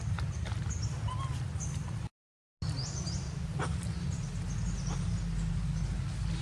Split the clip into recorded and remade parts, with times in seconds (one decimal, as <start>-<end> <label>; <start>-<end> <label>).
0.0-6.4 recorded